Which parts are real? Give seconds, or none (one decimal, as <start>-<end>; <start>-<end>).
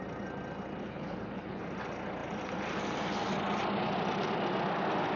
0.0-0.8; 1.6-5.2